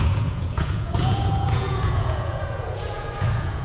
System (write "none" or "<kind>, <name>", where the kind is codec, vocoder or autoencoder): vocoder, Vocos